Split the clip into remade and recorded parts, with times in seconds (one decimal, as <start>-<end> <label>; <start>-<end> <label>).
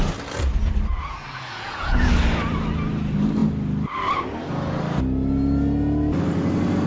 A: 0.0-0.6 recorded; 0.6-2.1 remade; 2.1-6.9 recorded